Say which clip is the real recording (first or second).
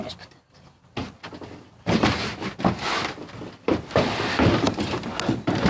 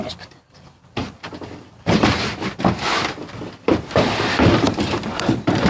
first